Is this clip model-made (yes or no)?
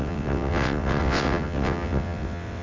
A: yes